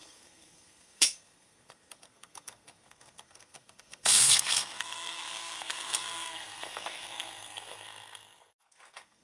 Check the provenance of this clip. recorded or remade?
remade